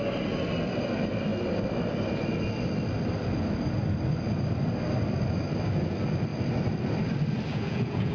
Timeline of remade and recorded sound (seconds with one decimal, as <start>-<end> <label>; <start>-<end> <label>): 0.0-7.5 recorded; 7.5-8.1 remade